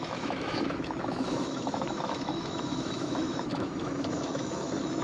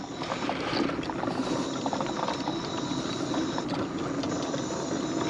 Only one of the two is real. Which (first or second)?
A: second